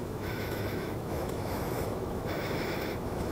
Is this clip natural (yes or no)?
no